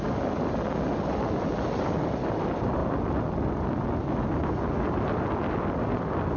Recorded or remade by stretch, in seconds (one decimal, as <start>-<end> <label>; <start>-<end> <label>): 0.0-6.4 recorded